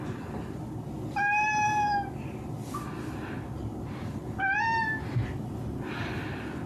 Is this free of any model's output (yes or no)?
yes